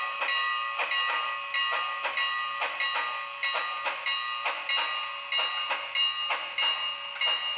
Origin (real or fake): real